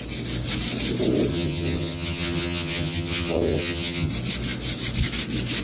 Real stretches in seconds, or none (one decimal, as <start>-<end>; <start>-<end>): 0.0-1.3; 4.1-5.6